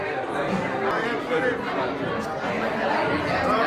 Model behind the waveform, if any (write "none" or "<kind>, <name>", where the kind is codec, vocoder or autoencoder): none